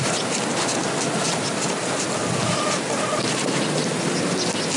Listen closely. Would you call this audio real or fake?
real